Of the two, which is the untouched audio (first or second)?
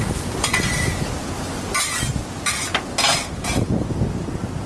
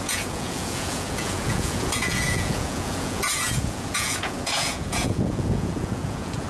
first